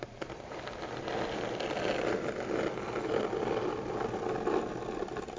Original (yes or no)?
yes